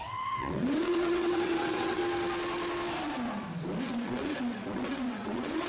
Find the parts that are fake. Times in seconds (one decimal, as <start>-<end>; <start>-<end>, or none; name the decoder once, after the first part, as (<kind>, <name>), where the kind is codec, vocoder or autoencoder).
0.0-2.0 (vocoder, WaveNeXt); 3.8-5.7